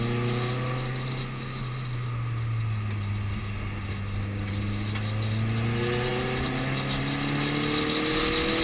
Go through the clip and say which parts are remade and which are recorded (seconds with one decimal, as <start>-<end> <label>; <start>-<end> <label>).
0.0-8.6 recorded